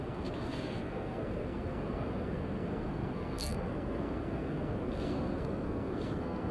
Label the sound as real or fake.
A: fake